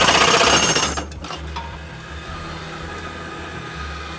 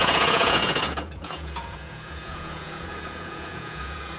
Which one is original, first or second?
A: first